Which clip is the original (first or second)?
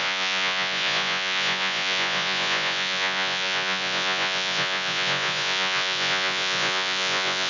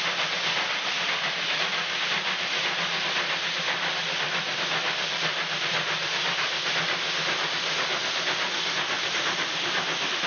second